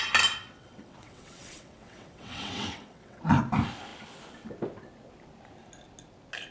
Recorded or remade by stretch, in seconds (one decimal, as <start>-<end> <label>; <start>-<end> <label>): 0.0-0.4 recorded; 0.4-3.2 remade; 3.2-6.5 recorded